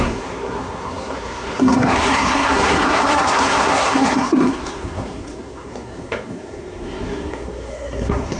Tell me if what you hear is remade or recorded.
remade